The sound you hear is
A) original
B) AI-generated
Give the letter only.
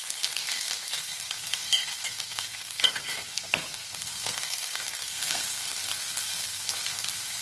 B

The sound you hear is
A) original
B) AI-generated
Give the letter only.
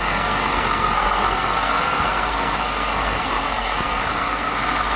B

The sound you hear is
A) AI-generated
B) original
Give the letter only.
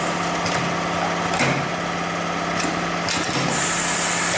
B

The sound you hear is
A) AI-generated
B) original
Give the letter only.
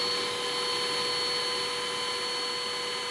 B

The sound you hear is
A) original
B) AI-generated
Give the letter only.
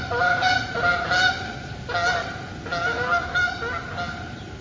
A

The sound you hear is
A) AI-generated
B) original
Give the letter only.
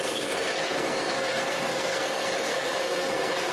A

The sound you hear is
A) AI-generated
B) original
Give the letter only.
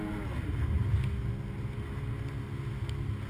B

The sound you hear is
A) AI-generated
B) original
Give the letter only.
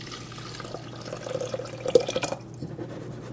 B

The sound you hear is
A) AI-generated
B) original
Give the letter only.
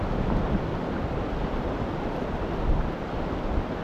B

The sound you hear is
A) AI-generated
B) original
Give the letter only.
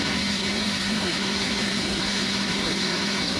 A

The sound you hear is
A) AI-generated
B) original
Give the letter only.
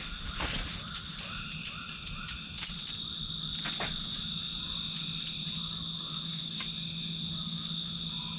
B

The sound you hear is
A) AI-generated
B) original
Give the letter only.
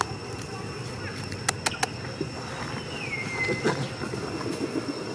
B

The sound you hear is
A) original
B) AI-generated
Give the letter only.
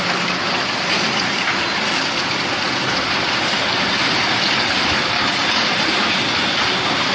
A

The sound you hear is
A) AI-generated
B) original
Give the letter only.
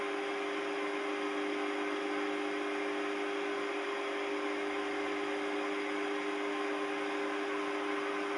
B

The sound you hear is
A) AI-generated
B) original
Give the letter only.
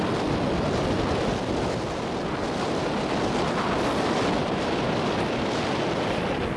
B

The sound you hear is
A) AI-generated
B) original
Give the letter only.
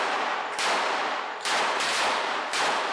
B